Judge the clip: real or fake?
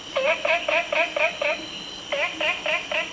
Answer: real